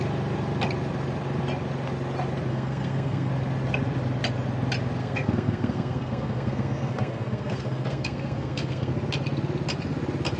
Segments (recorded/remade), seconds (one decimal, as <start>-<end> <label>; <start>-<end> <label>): 0.0-2.5 recorded; 2.5-3.3 remade; 3.3-5.0 recorded; 5.0-8.9 remade; 8.9-10.4 recorded